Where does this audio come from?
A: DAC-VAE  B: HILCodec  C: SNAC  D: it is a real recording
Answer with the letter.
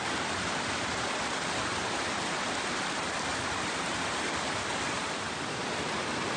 D